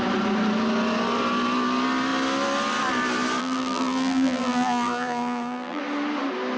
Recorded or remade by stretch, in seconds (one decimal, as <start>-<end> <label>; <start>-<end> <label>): 0.0-3.4 recorded; 3.4-5.8 remade; 5.8-6.6 recorded